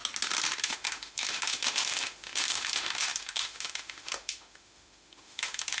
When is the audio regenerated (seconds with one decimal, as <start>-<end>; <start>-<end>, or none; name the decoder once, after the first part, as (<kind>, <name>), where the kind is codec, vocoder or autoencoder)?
0.6-5.8 (autoencoder, DAC-VAE)